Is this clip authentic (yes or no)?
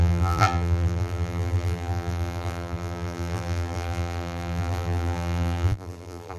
no